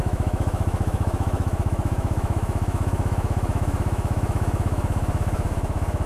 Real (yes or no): no